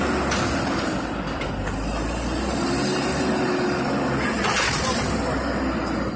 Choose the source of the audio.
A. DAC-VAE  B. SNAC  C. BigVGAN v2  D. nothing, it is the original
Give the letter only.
D